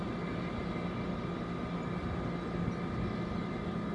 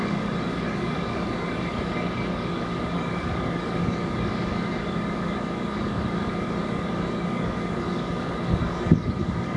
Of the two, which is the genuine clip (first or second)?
first